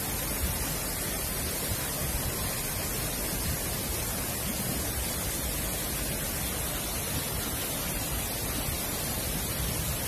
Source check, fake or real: real